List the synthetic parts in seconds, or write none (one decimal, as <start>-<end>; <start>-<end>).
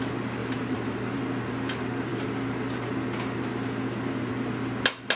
0.4-1.4